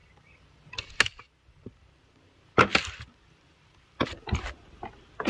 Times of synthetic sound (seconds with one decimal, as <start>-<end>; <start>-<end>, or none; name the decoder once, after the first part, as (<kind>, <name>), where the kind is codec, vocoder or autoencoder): none